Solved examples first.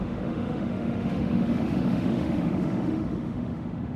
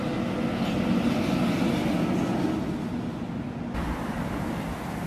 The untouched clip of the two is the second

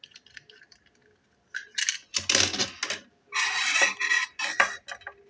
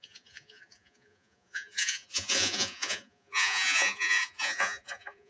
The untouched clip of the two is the first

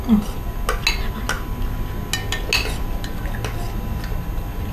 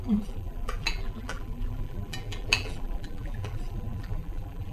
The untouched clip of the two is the first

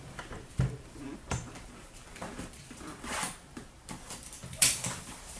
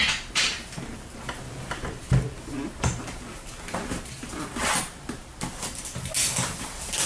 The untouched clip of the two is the second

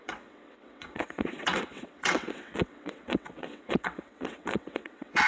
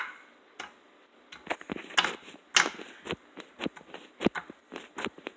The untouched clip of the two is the second